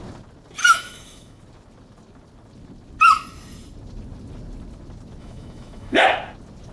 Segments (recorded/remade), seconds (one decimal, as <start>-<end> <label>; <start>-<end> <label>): 0.0-0.6 recorded; 0.6-1.4 remade; 1.4-5.2 recorded; 5.2-6.0 remade; 6.0-6.7 recorded

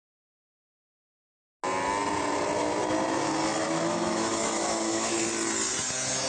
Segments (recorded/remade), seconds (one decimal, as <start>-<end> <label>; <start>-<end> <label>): 0.0-3.6 recorded; 3.6-5.1 remade; 5.1-6.3 recorded

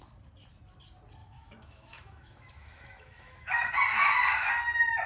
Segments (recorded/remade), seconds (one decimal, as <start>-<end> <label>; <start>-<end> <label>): 0.0-1.2 recorded; 1.2-3.7 remade; 3.7-5.1 recorded